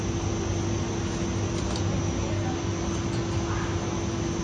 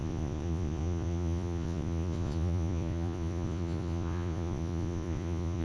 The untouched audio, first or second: first